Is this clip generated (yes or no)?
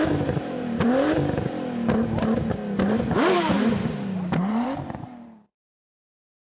yes